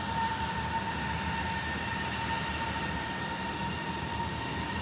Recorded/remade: recorded